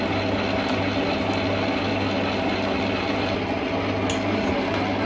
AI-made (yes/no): no